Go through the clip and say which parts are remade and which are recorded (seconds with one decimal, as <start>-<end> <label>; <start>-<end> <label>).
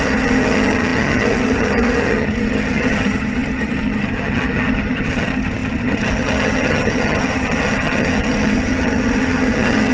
0.0-9.9 remade